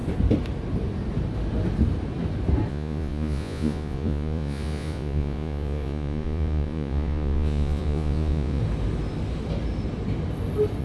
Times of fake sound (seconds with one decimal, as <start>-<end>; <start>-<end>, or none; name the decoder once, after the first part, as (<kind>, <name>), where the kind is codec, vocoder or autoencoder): 2.7-8.6 (vocoder, Vocos)